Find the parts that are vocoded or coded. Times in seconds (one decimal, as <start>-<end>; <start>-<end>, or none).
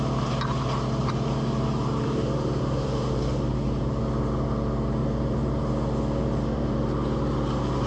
1.0-4.0; 5.0-5.7; 6.2-6.8